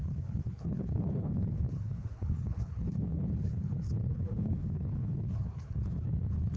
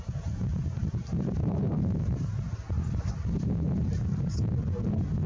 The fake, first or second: first